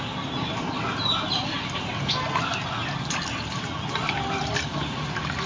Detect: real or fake real